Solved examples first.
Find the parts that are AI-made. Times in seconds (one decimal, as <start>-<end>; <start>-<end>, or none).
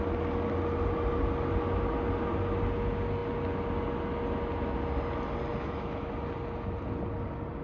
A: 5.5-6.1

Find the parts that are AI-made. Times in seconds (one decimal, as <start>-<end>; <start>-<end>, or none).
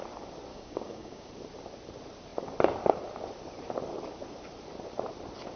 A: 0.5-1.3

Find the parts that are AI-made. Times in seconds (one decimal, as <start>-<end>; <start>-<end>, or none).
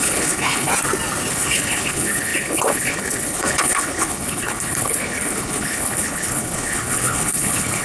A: 0.0-0.7; 1.3-7.8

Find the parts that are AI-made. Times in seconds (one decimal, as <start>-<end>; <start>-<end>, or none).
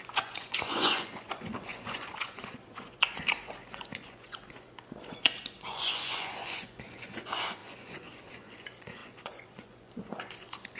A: 0.0-10.8